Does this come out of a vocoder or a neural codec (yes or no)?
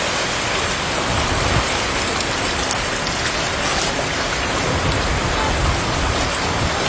no